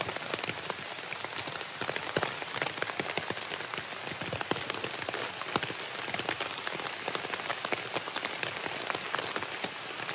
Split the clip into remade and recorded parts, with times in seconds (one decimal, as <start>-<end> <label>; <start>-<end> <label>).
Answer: 0.0-10.1 recorded